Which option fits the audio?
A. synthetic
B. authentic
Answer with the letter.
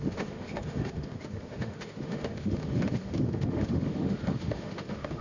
A